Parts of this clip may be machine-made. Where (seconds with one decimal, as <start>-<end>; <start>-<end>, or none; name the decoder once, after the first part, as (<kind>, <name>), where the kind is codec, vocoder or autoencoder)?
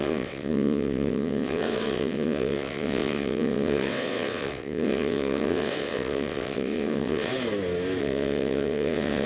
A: 0.0-7.3 (vocoder, WaveNeXt); 8.0-9.3